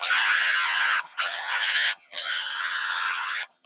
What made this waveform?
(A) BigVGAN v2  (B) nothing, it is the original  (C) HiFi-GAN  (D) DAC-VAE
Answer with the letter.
C